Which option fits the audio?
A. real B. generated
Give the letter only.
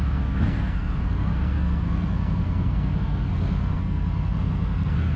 B